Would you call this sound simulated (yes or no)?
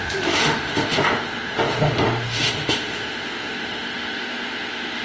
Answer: yes